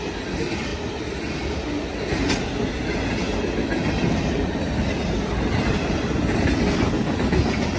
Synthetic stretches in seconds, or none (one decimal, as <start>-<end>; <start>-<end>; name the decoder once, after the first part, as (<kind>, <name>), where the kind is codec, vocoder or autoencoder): none